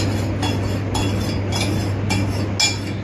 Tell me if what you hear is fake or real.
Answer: real